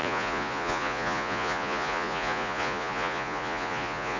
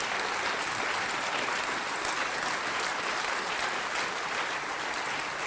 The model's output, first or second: first